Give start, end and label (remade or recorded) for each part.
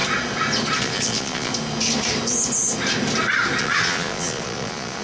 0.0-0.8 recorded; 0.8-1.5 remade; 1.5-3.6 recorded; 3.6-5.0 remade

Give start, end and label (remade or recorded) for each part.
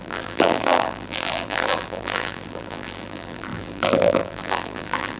0.0-5.2 remade